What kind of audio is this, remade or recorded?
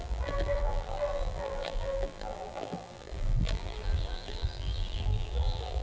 remade